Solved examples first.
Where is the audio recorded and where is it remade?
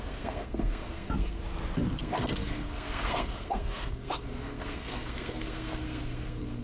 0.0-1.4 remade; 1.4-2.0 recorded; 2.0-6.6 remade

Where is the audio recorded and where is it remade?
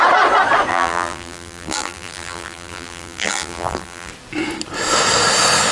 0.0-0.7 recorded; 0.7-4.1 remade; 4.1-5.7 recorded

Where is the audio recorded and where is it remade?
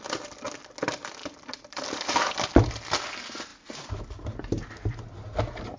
0.0-1.2 recorded; 1.2-2.5 remade; 2.5-3.5 recorded; 3.5-4.0 remade; 4.0-5.8 recorded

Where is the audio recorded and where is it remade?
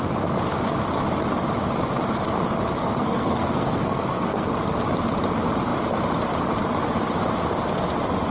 0.0-2.8 recorded; 2.8-4.5 remade; 4.5-8.3 recorded